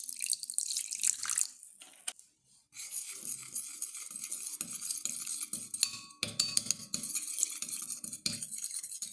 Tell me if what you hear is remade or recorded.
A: recorded